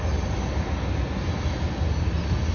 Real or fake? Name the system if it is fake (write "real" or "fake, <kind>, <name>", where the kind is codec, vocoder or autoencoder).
real